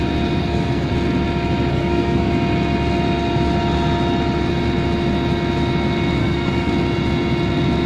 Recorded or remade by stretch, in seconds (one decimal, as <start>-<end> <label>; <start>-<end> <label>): 0.0-0.4 recorded; 0.4-0.9 remade; 0.9-1.7 recorded; 1.7-2.3 remade; 2.3-6.2 recorded; 6.2-6.7 remade; 6.7-7.9 recorded